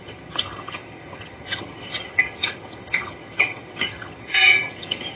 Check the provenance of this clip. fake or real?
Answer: fake